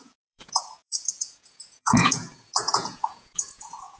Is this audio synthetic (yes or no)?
yes